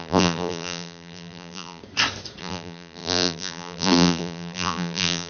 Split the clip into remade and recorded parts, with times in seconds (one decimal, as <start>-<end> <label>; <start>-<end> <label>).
0.0-1.8 remade; 1.8-2.4 recorded; 2.4-5.3 remade